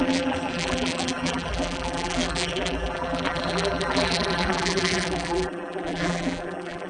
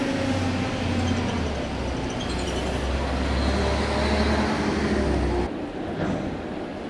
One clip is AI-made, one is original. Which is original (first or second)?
second